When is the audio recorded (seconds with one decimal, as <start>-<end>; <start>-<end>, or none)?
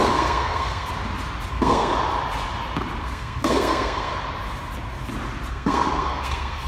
0.9-1.5; 1.9-3.0; 4.1-5.5